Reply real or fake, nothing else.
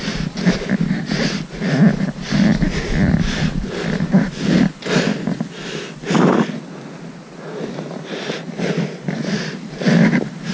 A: real